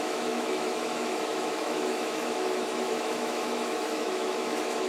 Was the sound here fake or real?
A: fake